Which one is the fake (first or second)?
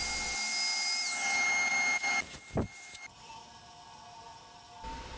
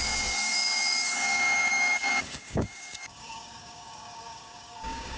second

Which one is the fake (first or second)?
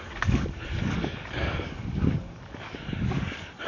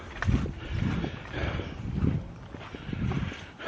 first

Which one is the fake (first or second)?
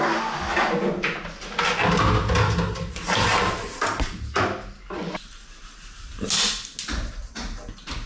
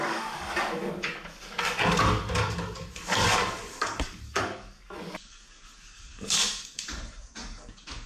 second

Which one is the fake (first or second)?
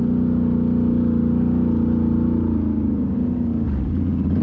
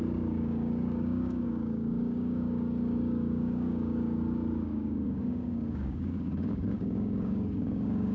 second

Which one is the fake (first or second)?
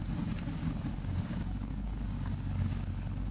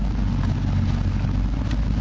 first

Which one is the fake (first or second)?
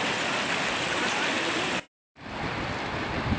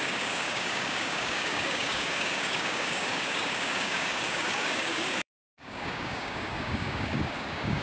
second